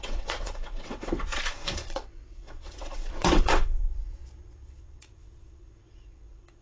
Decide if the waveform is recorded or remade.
remade